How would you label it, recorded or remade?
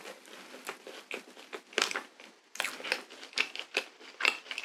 recorded